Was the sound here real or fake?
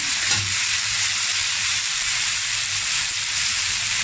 fake